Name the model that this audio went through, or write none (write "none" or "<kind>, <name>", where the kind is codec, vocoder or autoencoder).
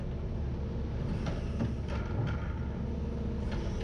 none